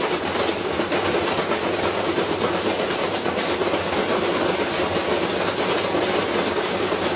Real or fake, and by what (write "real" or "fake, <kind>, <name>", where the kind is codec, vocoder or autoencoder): real